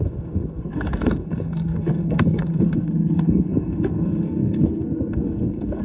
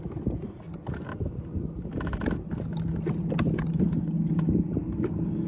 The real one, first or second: second